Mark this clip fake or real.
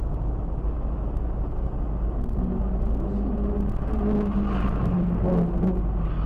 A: real